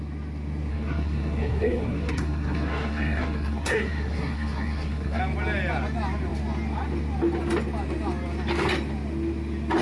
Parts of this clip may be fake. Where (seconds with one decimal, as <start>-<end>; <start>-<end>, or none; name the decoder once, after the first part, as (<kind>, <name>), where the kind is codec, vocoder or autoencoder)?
0.7-5.2 (codec, SNAC)